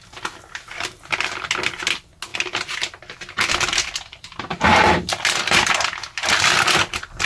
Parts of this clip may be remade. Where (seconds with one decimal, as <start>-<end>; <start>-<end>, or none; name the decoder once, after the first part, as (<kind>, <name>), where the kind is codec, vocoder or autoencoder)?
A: none